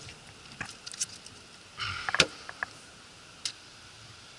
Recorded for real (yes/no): yes